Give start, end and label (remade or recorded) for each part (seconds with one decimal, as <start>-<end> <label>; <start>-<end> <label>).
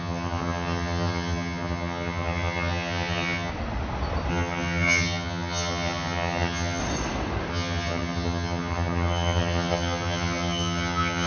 0.0-3.5 remade; 3.5-4.3 recorded; 4.3-6.8 remade; 6.8-7.5 recorded; 7.5-11.3 remade